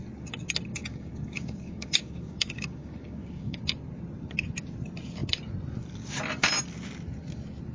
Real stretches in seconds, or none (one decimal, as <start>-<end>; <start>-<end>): 0.0-0.7; 3.6-7.7